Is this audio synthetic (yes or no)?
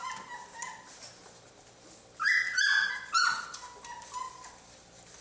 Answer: no